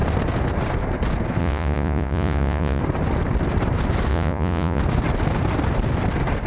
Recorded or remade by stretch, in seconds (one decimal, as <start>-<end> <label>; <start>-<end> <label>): 0.0-1.4 recorded; 1.4-2.8 remade; 2.8-4.1 recorded; 4.1-4.8 remade; 4.8-6.5 recorded